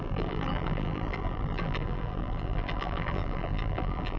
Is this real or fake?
fake